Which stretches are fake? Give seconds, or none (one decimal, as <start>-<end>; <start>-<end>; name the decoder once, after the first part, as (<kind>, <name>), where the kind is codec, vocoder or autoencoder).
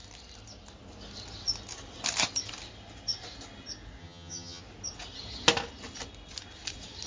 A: 4.0-4.6 (vocoder, HiFi-GAN)